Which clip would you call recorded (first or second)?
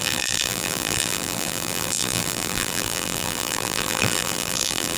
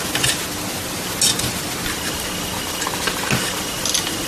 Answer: second